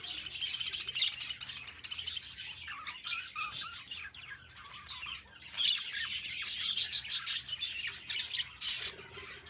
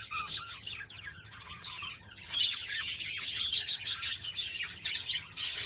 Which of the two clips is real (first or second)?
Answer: first